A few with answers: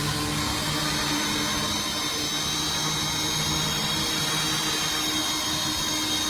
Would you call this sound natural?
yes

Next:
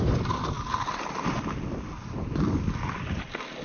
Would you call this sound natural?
yes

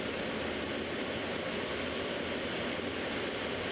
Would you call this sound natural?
yes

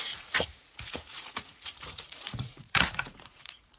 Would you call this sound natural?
no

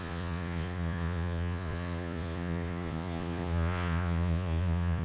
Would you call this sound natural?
no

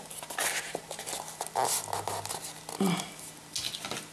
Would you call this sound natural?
yes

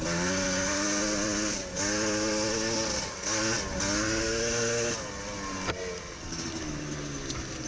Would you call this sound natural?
yes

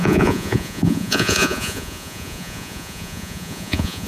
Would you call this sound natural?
no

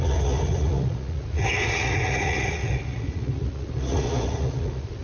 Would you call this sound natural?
no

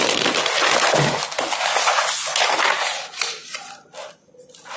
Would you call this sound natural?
yes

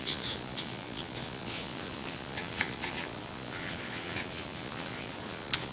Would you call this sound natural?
no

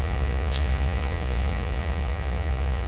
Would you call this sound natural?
no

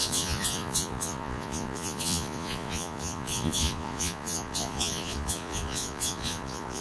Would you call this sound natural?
no